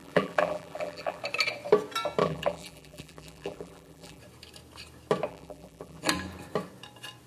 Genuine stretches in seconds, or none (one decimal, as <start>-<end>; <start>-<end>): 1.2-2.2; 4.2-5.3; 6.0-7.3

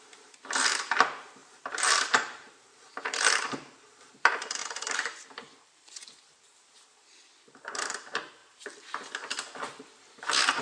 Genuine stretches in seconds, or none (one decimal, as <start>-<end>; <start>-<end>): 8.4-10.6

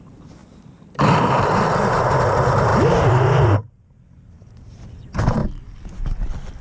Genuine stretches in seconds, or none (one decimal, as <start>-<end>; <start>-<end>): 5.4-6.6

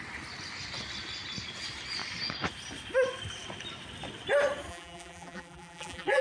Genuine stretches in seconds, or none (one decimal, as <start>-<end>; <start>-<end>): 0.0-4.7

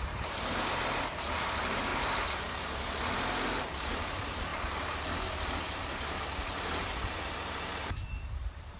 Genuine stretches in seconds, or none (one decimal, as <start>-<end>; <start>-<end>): none

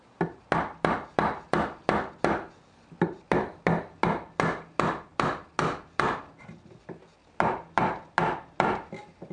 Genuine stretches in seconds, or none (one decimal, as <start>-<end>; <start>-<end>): 0.0-9.3

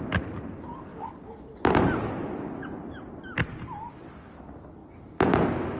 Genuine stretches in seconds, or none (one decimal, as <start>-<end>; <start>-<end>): 0.0-0.9; 1.5-5.8

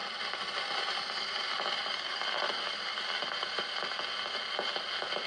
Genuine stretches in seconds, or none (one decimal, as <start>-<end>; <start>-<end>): 3.1-5.3